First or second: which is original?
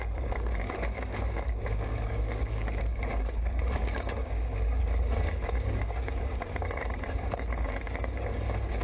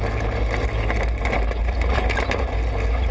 second